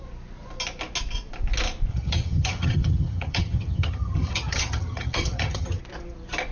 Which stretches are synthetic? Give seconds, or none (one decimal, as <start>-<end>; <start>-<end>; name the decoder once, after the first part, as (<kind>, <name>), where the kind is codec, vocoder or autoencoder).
1.9-5.8 (vocoder, HiFi-GAN)